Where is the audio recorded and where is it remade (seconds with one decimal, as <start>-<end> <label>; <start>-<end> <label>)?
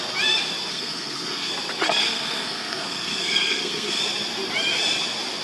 0.0-0.7 recorded; 0.7-1.5 remade; 1.5-2.0 recorded; 2.0-4.0 remade; 4.0-5.4 recorded